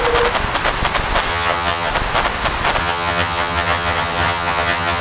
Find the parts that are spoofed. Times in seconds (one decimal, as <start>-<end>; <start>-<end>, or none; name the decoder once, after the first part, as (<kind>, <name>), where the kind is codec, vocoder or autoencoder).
1.3-1.9 (vocoder, HiFi-GAN); 2.8-5.0